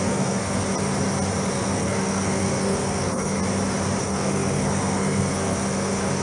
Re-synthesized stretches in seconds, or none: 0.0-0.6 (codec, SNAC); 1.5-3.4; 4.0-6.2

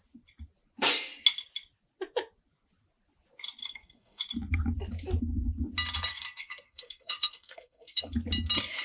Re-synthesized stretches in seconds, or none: 3.6-4.2 (codec, SNAC); 6.1-8.0

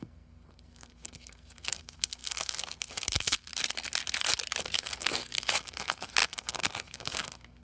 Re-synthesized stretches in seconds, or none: 0.0-3.5 (codec, SNAC); 4.6-7.6

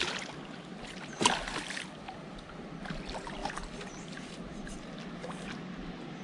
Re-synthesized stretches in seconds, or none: none

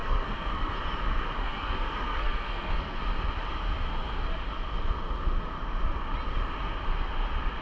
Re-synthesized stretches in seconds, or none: 0.0-0.7 (codec, SNAC); 1.4-3.0

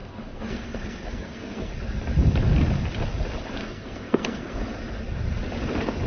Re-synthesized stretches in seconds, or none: 0.0-1.7 (codec, SNAC); 3.6-4.6